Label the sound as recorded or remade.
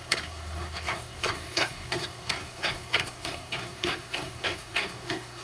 remade